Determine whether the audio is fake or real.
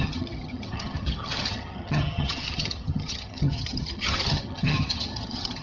fake